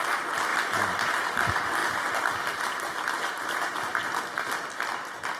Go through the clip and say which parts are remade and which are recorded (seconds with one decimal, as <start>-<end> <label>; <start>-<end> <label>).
0.0-2.9 recorded; 2.9-4.0 remade; 4.0-5.4 recorded